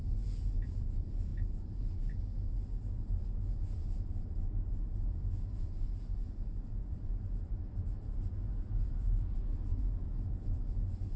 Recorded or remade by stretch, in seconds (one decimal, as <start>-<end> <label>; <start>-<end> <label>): 0.0-11.2 remade